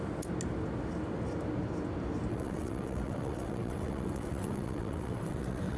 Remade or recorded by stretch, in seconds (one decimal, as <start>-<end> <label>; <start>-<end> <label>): 0.0-2.3 recorded; 2.3-5.8 remade